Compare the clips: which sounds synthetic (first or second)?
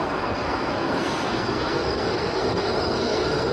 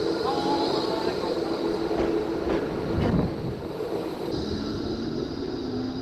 first